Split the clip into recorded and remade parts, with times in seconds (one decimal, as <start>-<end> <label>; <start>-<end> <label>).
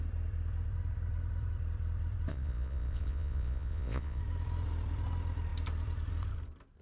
0.0-2.3 recorded; 2.3-4.2 remade; 4.2-6.8 recorded